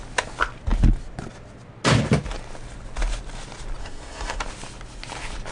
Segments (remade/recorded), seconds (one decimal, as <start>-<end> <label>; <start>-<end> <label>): 0.0-3.8 recorded; 3.8-4.4 remade; 4.4-5.5 recorded